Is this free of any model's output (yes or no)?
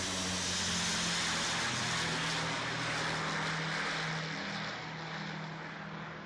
yes